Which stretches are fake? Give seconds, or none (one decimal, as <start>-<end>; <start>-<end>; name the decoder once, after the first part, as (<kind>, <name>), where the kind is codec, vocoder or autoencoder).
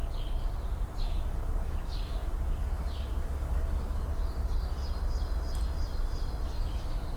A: 0.0-0.4 (codec, DAC); 1.0-4.1; 6.7-7.2